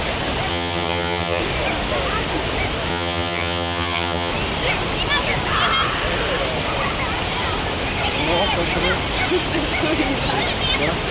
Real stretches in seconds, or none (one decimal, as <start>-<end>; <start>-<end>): 0.0-0.5; 1.4-2.9; 4.3-11.1